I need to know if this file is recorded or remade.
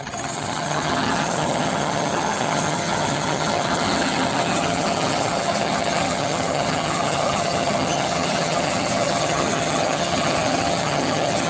remade